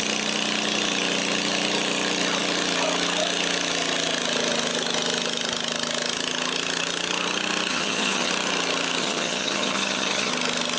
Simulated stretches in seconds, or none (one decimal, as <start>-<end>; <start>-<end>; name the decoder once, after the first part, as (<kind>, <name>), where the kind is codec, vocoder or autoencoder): 7.7-8.3 (vocoder, HiFi-GAN); 9.0-10.3

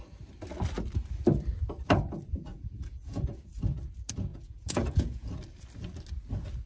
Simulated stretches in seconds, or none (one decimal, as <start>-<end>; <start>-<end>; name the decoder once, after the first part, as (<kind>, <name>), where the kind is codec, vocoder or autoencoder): 2.5-3.4 (vocoder, Vocos); 4.3-5.3